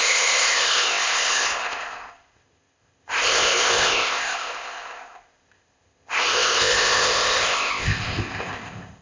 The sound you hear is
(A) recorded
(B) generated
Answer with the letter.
B